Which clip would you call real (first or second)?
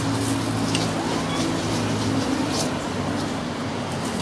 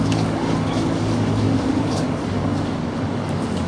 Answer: first